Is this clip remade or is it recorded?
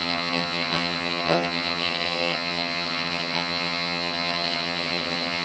remade